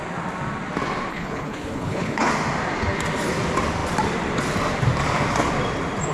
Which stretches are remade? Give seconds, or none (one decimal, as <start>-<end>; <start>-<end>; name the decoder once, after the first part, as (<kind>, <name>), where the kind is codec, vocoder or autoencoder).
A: 1.1-2.3 (codec, HILCodec)